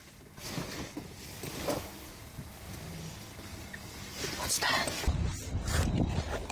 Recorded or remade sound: recorded